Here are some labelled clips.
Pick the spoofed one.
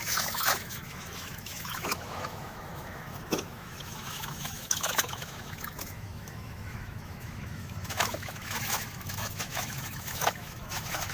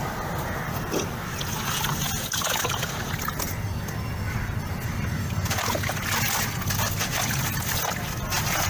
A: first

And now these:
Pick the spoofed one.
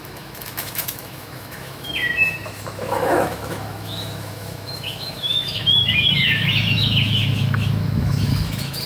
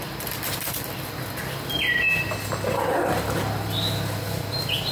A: first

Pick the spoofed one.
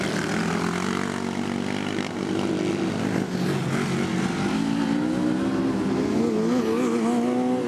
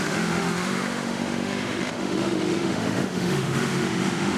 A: second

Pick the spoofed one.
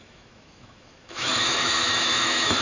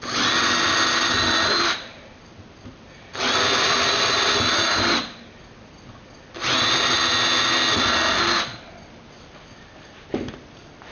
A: first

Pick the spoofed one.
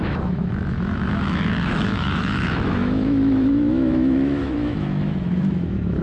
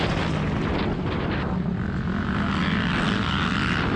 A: first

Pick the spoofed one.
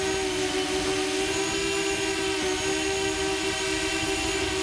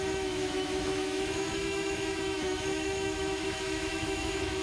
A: second